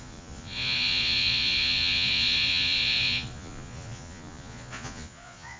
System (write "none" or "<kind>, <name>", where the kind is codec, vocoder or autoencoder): vocoder, Vocos